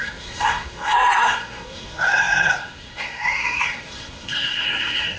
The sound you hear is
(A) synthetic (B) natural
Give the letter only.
A